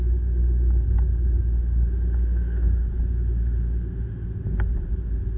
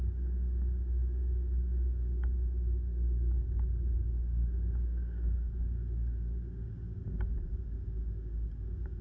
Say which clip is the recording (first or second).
first